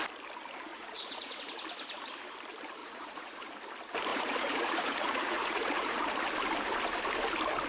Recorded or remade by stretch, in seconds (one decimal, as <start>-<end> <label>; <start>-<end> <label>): 0.0-0.7 recorded; 0.7-1.4 remade; 1.4-2.8 recorded; 2.8-3.5 remade; 3.5-4.1 recorded; 4.1-6.0 remade; 6.0-7.7 recorded